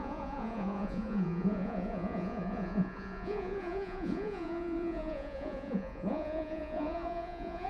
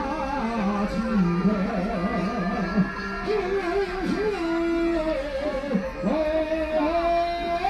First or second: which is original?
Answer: second